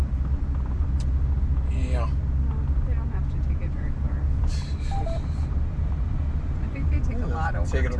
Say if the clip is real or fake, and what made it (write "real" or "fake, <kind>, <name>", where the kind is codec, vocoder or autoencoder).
real